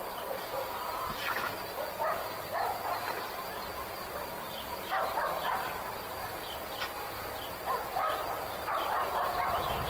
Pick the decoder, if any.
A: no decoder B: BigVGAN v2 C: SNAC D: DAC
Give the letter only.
A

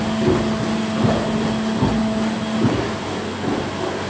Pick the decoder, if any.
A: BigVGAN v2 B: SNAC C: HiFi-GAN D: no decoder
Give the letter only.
D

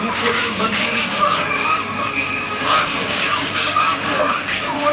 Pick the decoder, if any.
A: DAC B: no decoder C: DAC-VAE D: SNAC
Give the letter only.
A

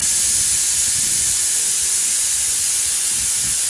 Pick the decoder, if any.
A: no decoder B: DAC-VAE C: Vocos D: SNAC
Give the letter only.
C